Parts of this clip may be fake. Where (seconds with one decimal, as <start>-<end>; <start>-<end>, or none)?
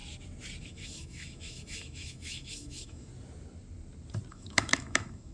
0.6-3.1; 4.3-5.3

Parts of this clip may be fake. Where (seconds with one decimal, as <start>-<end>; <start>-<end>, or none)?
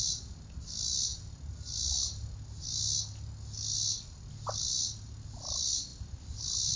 none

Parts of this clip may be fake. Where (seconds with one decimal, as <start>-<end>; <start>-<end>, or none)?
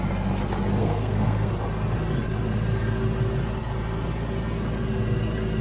0.8-1.5